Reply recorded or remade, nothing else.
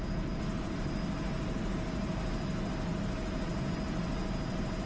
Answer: recorded